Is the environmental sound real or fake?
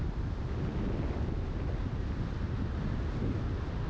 real